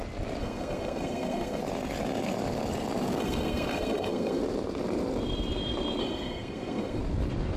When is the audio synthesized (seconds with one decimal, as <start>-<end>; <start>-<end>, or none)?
0.4-1.6; 3.2-4.4; 6.0-7.0